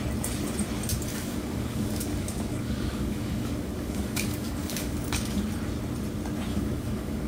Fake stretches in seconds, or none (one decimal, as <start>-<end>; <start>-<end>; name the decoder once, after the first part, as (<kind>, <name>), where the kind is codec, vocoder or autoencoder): 1.1-5.4 (codec, DAC); 6.5-7.3

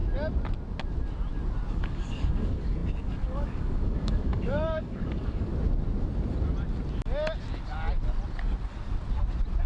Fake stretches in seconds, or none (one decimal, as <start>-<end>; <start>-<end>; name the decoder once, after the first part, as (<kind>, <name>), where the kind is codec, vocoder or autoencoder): 1.7-5.5 (codec, DAC)

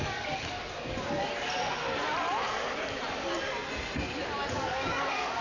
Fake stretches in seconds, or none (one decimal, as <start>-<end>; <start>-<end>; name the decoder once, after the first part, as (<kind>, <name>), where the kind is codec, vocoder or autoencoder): 0.0-1.3 (codec, DAC); 4.5-5.4

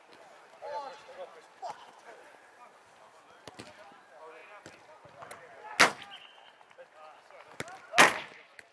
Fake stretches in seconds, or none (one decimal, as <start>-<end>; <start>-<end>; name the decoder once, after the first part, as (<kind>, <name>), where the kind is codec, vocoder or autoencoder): none

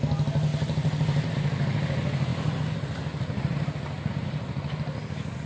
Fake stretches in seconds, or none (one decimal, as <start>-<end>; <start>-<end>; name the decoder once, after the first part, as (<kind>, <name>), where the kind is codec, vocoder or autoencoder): none